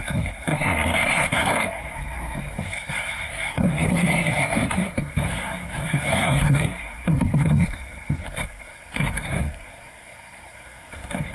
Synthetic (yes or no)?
yes